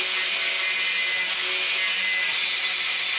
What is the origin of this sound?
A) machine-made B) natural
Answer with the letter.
B